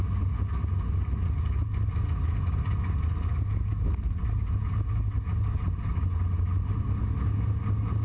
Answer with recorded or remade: recorded